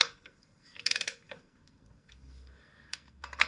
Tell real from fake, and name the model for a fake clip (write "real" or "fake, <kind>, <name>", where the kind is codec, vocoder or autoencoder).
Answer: fake, codec, SNAC